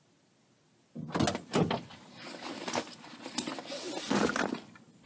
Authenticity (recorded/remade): recorded